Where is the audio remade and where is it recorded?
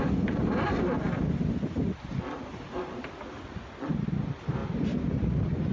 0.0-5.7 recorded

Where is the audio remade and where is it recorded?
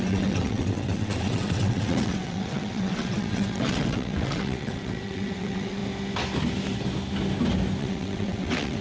0.0-5.8 remade; 5.8-7.8 recorded; 7.8-8.8 remade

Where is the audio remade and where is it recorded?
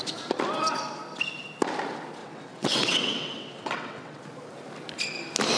0.0-2.2 recorded; 2.2-4.2 remade; 4.2-5.6 recorded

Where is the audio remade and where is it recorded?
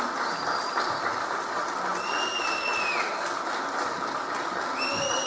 0.0-5.3 recorded